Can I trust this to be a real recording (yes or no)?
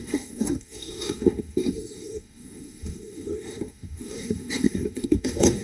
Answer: no